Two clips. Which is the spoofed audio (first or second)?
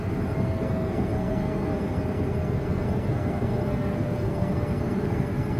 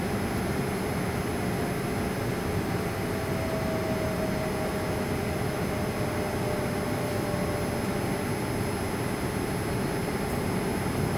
first